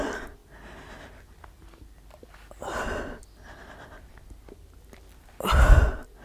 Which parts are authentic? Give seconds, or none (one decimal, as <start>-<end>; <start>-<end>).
0.0-6.2